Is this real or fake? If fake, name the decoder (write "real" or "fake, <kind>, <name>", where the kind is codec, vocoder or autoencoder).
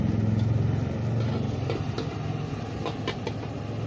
real